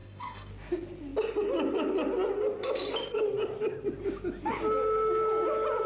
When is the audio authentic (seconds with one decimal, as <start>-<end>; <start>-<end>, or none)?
0.5-5.9